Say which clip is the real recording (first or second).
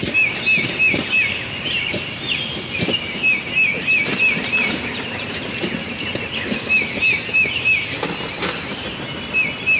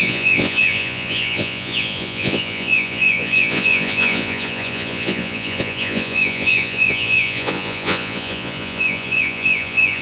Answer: first